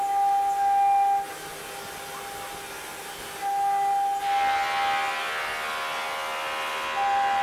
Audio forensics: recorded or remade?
recorded